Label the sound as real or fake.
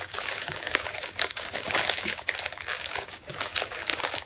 fake